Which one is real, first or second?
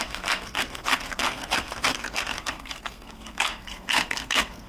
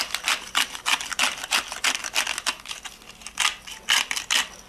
second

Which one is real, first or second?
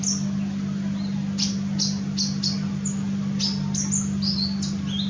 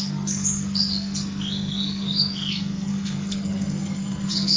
first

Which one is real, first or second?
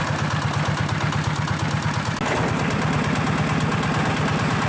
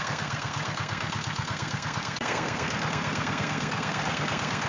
first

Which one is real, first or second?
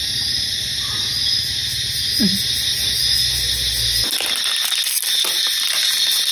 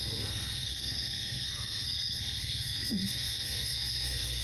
first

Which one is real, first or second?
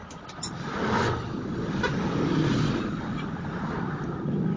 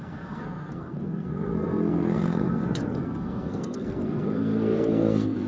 first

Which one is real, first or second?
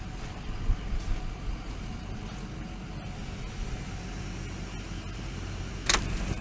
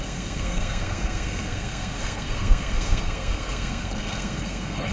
first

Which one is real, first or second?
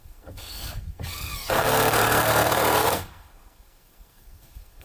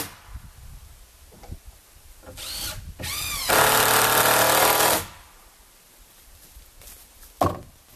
second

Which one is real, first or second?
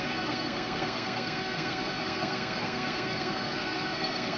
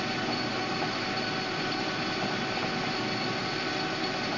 second